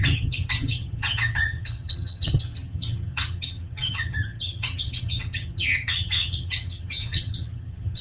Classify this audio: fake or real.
fake